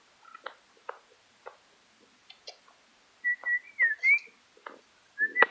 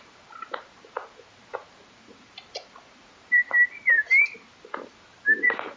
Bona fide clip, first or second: first